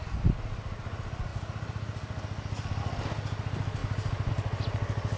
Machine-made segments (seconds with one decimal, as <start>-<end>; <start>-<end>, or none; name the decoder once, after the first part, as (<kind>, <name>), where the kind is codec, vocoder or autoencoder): none